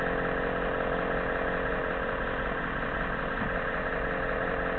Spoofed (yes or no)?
no